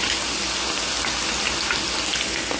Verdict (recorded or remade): recorded